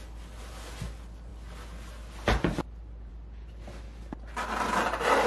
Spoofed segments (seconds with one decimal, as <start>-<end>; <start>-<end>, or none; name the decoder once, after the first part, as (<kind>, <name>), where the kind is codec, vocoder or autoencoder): none